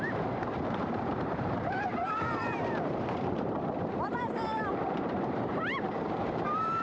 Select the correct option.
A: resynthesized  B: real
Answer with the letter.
A